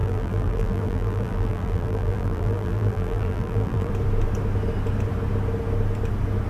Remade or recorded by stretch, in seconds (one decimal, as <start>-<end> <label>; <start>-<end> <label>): 0.0-3.9 remade; 3.9-6.5 recorded